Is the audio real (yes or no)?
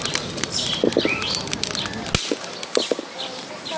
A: yes